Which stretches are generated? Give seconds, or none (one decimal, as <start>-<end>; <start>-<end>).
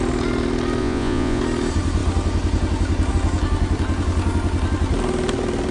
0.8-1.4